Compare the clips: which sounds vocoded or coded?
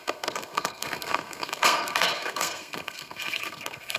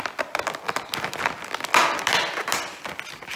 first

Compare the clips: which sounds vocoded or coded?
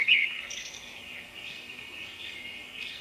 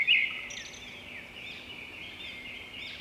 first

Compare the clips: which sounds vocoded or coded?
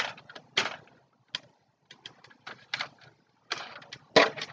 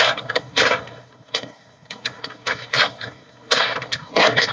second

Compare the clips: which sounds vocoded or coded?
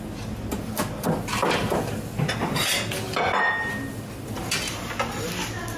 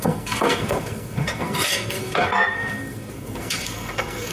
second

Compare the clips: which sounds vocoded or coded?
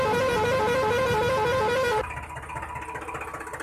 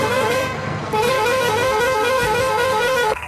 second